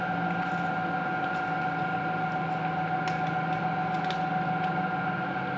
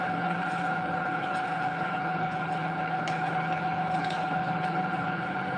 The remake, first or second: second